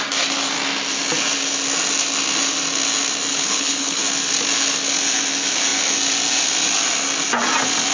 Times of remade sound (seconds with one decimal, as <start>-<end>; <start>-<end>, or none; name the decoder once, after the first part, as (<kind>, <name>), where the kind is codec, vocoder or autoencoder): 3.3-4.0 (codec, HILCodec)